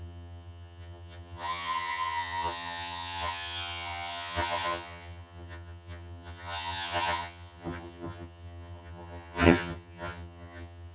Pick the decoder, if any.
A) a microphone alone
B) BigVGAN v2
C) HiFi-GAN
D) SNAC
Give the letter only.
C